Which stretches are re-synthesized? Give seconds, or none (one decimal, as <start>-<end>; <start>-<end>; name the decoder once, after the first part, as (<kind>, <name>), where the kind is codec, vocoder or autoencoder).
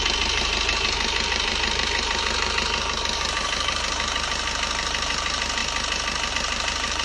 0.0-5.6 (vocoder, BigVGAN v2); 6.3-7.0